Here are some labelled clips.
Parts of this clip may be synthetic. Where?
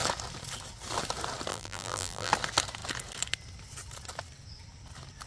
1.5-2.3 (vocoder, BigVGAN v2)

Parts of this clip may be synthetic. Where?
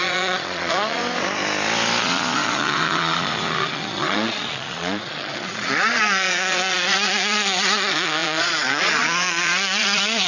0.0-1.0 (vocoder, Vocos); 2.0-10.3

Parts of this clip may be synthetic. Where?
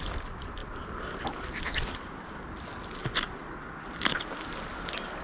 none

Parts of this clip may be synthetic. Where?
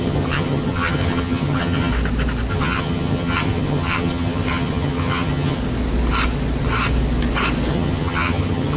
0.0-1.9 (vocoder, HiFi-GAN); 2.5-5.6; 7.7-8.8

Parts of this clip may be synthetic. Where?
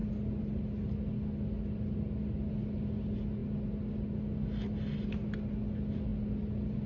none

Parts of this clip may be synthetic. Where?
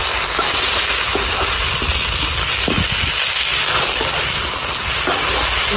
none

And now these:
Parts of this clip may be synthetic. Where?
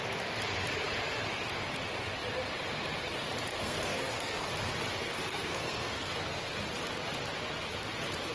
3.5-4.5 (codec, SNAC); 5.0-6.5